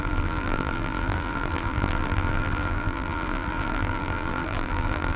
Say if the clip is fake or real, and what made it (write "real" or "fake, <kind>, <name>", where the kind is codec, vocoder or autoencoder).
fake, vocoder, BigVGAN v2